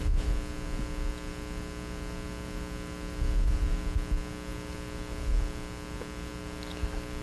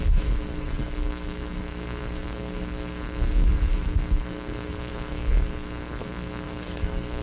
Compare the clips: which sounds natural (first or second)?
first